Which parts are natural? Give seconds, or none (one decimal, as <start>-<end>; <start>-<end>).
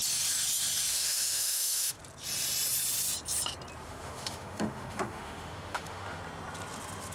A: 0.0-0.9; 2.0-3.9; 6.2-7.1